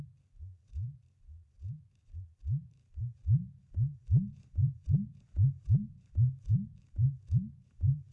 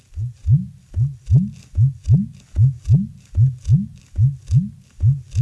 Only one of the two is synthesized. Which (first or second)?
first